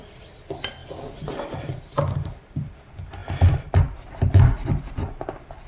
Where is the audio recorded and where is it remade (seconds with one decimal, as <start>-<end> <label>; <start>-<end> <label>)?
0.0-0.8 recorded; 0.8-2.0 remade; 2.0-5.7 recorded